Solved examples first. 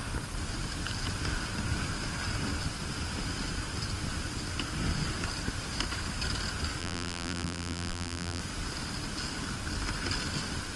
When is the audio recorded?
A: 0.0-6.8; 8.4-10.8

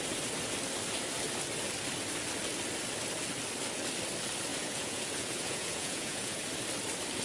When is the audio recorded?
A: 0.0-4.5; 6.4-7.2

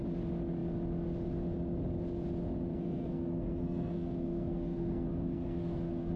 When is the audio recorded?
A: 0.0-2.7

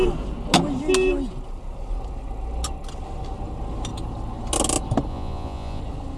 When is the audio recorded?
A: 0.0-5.1; 5.8-6.2